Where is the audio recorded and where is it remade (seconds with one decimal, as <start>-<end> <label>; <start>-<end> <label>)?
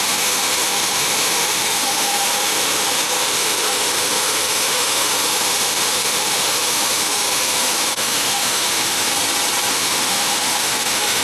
0.0-9.1 remade; 9.1-9.7 recorded; 9.7-11.2 remade